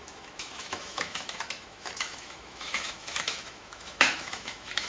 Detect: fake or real fake